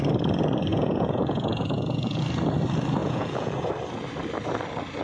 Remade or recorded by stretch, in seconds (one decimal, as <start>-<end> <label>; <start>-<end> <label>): 0.0-0.7 recorded; 0.7-2.2 remade; 2.2-3.0 recorded; 3.0-3.7 remade; 3.7-5.0 recorded